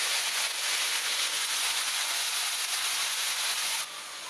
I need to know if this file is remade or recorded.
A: remade